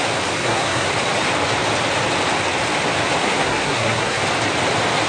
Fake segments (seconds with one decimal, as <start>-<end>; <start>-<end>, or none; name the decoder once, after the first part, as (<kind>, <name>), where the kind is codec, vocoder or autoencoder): 0.4-0.9 (codec, SNAC); 3.2-4.2